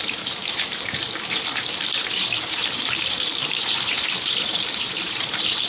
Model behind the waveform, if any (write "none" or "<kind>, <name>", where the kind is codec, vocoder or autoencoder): vocoder, BigVGAN v2